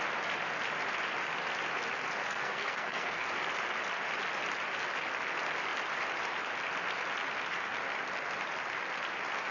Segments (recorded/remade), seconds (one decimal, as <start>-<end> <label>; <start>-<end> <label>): 0.0-2.2 recorded; 2.2-3.3 remade; 3.3-9.5 recorded